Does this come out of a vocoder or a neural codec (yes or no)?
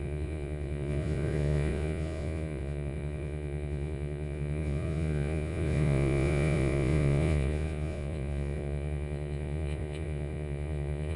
yes